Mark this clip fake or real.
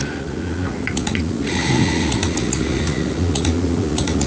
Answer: fake